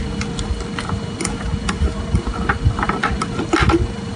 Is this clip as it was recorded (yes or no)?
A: yes